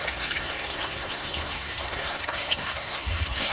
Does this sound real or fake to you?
fake